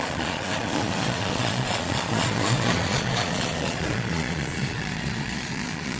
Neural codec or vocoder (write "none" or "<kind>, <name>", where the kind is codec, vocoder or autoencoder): vocoder, Vocos